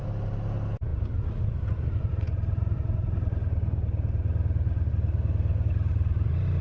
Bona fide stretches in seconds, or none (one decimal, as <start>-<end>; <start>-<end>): 0.0-6.6